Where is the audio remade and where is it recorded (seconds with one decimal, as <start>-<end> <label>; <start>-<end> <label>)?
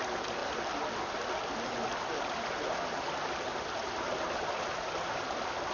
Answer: 0.0-5.7 recorded